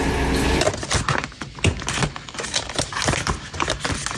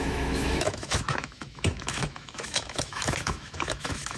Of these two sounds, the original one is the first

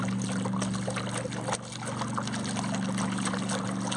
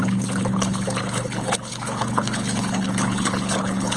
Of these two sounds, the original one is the first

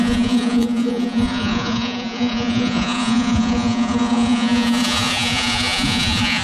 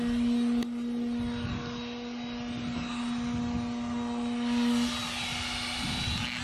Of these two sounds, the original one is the second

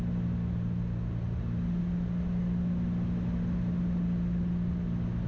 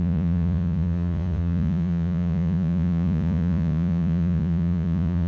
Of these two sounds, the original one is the first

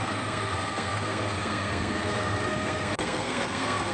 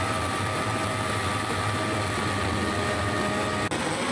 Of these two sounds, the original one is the second